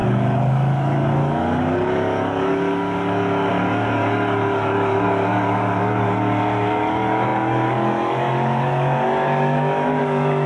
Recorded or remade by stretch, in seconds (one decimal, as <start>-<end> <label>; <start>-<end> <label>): 0.0-10.5 remade